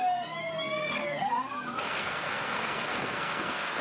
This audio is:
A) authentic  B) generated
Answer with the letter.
B